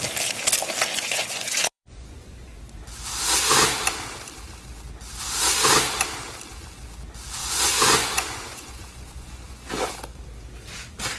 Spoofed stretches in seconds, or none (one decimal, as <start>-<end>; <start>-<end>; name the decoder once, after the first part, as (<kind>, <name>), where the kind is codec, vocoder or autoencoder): 0.9-2.6 (vocoder, Vocos); 7.4-9.7